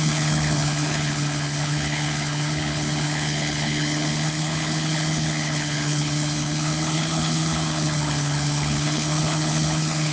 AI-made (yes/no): yes